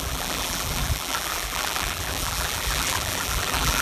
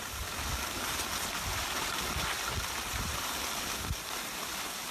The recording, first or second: second